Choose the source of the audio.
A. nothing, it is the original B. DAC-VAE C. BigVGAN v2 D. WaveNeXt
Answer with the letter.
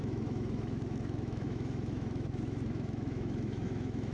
B